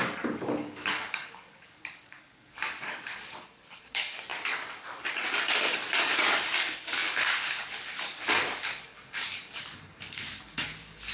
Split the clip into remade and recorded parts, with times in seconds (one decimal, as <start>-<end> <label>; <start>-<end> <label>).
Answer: 0.0-11.1 remade